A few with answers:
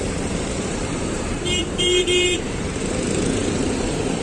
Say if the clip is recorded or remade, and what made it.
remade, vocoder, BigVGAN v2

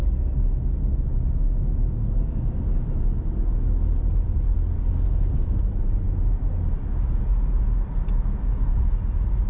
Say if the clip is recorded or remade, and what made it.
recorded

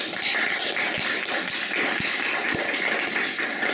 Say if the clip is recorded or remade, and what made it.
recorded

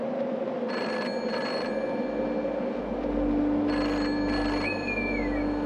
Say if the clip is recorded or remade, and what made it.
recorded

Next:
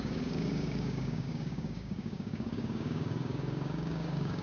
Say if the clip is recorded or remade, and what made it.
remade, codec, DAC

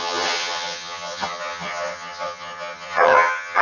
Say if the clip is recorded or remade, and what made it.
remade, vocoder, HiFi-GAN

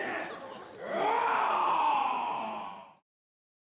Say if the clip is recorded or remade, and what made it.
recorded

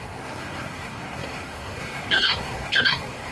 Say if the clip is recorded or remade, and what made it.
remade, codec, SNAC